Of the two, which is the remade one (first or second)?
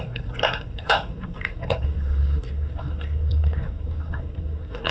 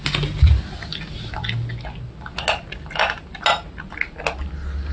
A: first